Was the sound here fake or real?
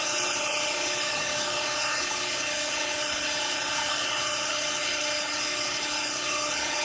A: fake